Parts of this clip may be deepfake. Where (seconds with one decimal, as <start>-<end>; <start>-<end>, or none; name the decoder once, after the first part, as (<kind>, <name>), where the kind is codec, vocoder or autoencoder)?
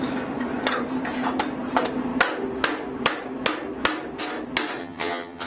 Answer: 4.8-5.5 (vocoder, HiFi-GAN)